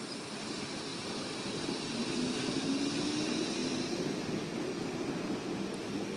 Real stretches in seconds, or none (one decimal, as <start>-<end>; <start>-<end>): 0.0-6.2